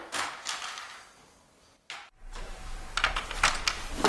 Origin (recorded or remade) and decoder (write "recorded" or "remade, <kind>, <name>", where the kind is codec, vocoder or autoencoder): recorded